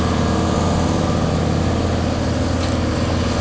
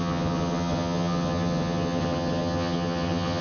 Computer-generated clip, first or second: second